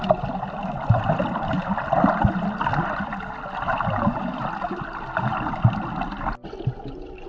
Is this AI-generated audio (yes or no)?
no